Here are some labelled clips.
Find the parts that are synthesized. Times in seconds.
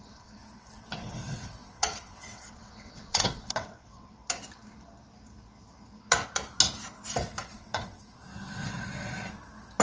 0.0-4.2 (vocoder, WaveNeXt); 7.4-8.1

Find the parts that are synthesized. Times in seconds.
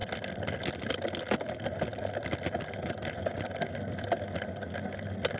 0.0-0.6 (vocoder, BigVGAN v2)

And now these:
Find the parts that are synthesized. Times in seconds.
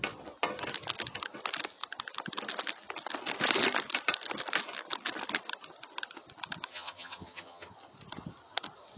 6.7-7.7 (vocoder, HiFi-GAN)